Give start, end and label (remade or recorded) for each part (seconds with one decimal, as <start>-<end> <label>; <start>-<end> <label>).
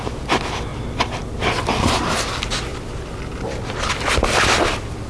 0.0-0.7 recorded; 0.7-2.1 remade; 2.1-5.1 recorded